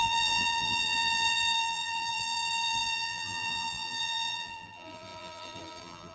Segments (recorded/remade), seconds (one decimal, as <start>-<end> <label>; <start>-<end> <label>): 0.0-6.1 remade